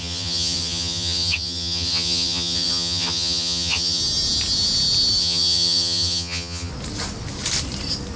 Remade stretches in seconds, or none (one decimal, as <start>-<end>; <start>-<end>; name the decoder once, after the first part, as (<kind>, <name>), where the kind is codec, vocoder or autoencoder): 0.0-4.0 (vocoder, HiFi-GAN); 5.2-6.7